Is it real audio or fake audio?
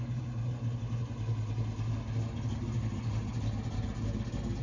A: real